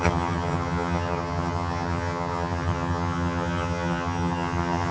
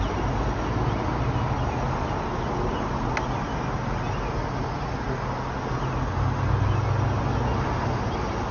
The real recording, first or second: second